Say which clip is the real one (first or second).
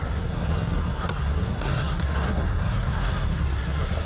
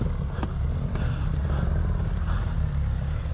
second